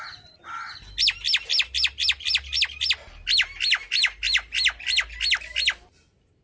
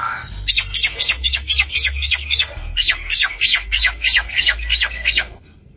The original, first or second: first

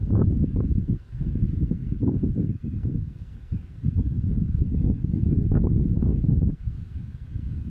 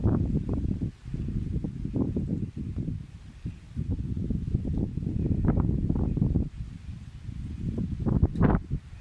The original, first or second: second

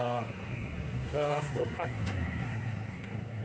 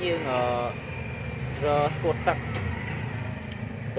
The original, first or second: second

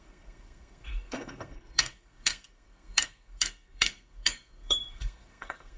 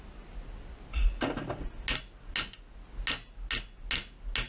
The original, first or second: second